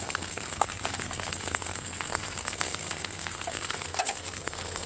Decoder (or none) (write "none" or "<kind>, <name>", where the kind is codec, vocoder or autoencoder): codec, SNAC